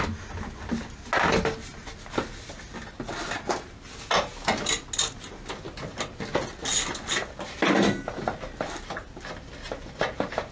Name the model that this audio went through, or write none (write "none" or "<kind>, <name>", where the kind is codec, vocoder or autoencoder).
none